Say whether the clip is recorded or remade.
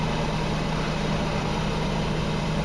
remade